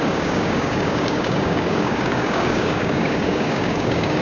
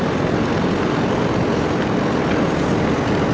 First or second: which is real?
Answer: second